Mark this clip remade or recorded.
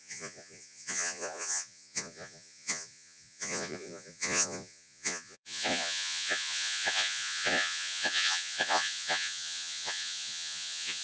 remade